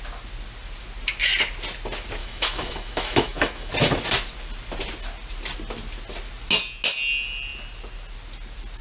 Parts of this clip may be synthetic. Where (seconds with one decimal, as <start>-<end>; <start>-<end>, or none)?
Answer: 2.2-3.7